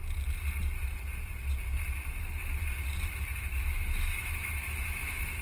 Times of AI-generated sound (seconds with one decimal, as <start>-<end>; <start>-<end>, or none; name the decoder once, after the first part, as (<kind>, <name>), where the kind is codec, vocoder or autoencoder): 2.2-2.6 (autoencoder, DAC-VAE); 3.3-5.4